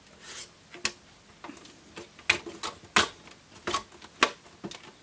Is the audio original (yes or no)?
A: yes